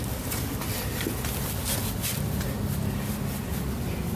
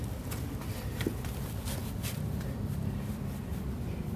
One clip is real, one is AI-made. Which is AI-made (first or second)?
second